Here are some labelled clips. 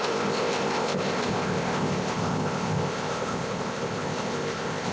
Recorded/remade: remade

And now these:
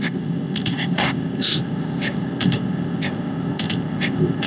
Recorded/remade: remade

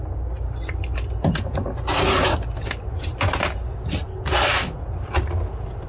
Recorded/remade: recorded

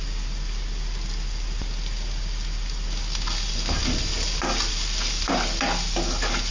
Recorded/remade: recorded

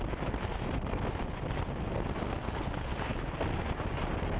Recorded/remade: recorded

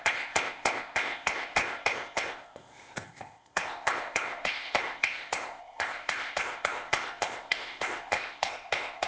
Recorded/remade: remade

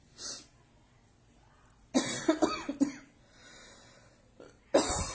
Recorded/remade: recorded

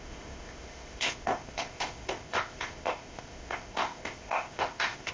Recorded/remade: remade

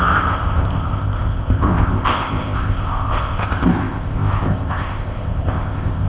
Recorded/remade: remade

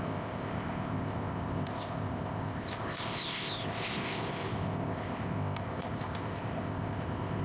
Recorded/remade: remade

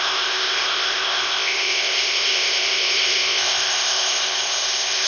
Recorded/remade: remade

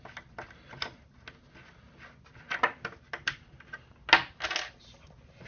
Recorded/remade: recorded